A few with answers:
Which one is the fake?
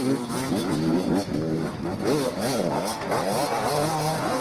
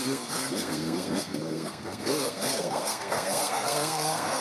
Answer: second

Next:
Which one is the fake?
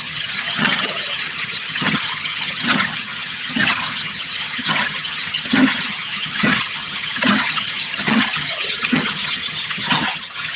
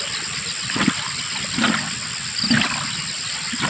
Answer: first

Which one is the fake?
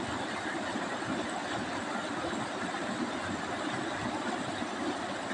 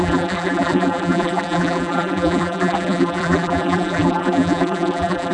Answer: second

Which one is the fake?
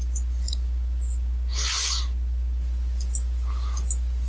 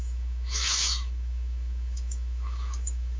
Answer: second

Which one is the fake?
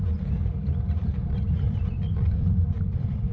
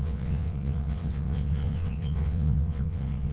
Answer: second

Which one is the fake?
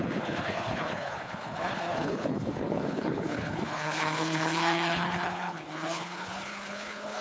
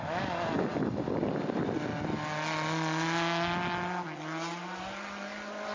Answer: first